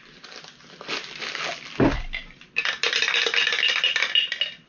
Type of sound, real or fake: real